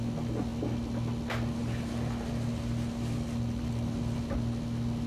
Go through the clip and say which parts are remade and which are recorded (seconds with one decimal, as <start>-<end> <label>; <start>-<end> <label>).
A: 0.0-5.1 recorded